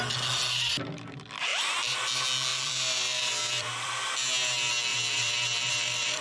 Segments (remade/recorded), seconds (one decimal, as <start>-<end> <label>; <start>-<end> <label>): 0.0-2.5 recorded; 2.5-4.1 remade; 4.1-4.9 recorded; 4.9-6.2 remade